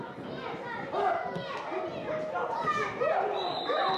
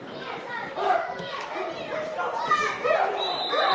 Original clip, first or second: first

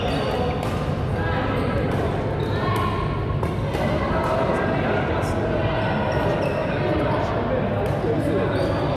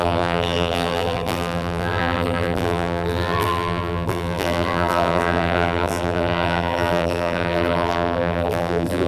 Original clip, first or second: first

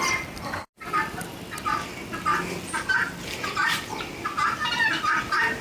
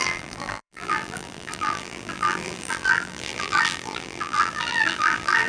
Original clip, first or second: first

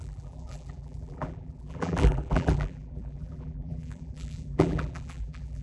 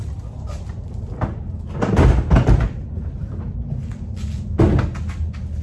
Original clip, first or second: second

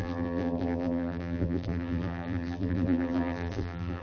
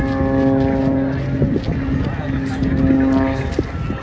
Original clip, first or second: second